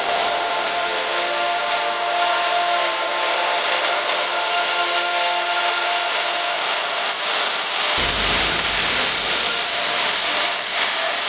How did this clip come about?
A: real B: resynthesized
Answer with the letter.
A